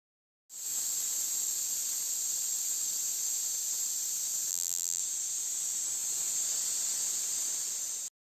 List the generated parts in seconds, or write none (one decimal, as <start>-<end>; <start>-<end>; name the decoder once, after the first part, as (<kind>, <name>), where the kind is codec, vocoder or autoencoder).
4.5-5.0 (vocoder, BigVGAN v2)